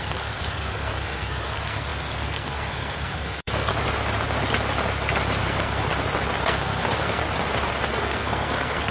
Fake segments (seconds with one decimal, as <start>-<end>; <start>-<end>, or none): 0.0-3.7; 5.4-5.9; 6.4-7.2; 7.9-8.9